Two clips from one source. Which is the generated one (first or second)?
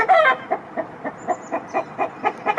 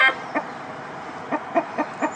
first